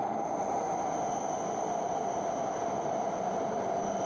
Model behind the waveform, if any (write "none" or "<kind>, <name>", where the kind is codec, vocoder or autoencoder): none